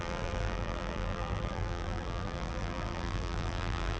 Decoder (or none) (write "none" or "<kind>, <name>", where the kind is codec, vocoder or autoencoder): vocoder, BigVGAN v2